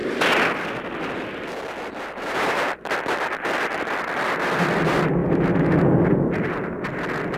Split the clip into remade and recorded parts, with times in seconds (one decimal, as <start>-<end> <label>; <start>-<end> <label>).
0.0-0.9 recorded; 0.9-5.2 remade; 5.2-7.4 recorded